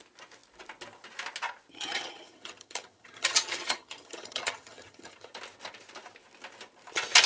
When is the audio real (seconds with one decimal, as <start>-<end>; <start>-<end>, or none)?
0.0-1.7; 5.3-7.3